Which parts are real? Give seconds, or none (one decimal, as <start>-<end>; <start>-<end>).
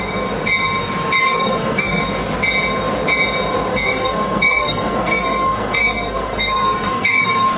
0.0-1.2; 2.0-3.7